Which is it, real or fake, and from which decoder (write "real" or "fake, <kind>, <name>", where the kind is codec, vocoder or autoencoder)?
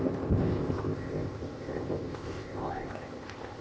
fake, codec, ZipCodec